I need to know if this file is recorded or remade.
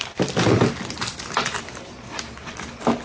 recorded